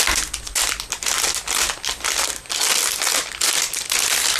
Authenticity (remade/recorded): recorded